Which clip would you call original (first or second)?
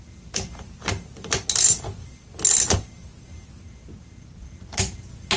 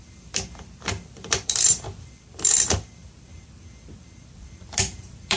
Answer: first